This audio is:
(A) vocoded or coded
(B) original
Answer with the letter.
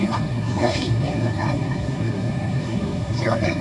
A